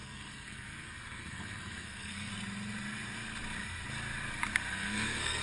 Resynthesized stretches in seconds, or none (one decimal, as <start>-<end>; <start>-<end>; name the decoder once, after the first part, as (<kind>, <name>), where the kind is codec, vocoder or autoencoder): 0.0-2.3 (codec, SNAC); 4.7-5.4